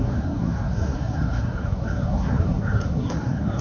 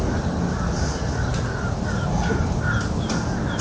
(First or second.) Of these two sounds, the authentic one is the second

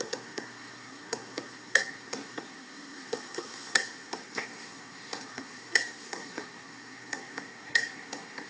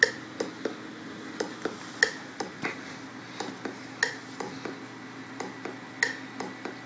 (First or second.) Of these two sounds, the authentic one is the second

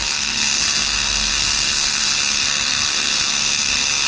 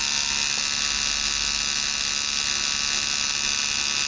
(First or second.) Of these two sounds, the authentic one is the second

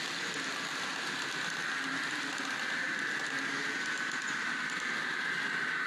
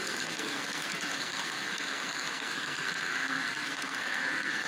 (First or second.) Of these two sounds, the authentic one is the first